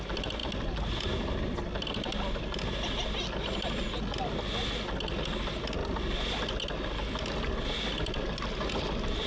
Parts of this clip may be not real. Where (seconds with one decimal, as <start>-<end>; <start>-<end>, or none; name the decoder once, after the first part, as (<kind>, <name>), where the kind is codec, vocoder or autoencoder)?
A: none